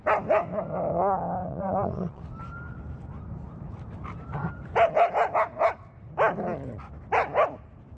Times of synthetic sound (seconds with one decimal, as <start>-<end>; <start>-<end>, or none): 1.4-2.2